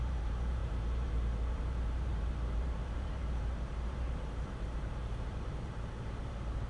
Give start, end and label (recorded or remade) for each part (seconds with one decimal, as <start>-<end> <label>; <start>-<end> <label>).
0.0-6.7 remade

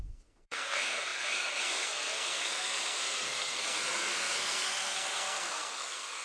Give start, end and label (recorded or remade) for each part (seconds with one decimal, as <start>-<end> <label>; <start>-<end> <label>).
0.0-6.2 remade